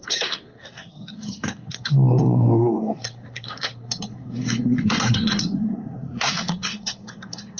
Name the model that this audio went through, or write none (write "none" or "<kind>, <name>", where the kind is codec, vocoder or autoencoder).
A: codec, SNAC